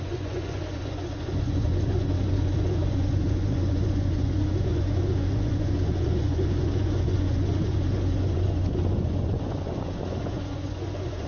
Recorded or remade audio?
remade